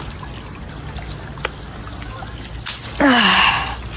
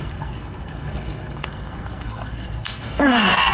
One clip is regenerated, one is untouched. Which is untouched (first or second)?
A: first